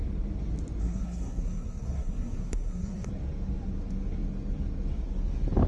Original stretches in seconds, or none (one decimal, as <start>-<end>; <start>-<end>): 0.0-0.8; 3.1-5.7